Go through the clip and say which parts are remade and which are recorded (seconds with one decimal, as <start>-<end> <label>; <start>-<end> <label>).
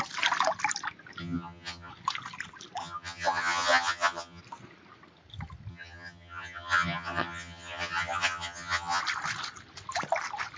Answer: 0.0-1.2 recorded; 1.2-1.9 remade; 1.9-2.8 recorded; 2.8-4.4 remade; 4.4-5.7 recorded; 5.7-9.0 remade; 9.0-10.6 recorded